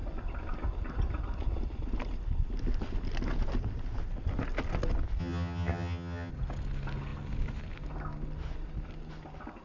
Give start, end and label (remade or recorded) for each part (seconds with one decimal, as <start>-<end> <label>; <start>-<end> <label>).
0.0-5.2 recorded; 5.2-6.3 remade; 6.3-9.6 recorded